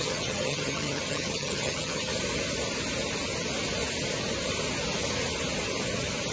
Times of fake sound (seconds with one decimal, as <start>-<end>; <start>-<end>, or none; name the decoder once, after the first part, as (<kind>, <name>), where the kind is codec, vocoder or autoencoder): 0.0-2.1 (vocoder, HiFi-GAN)